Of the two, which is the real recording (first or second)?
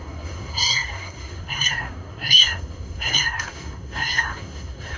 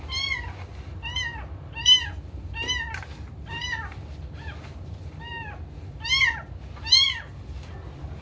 second